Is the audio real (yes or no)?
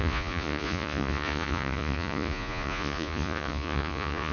no